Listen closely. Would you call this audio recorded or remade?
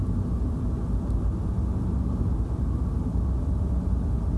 recorded